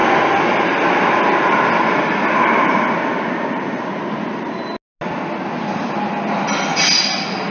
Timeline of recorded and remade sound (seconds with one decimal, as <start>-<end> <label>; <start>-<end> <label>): 0.0-7.5 recorded